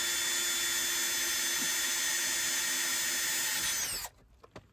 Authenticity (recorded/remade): recorded